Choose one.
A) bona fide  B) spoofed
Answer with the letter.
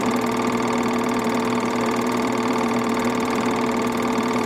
B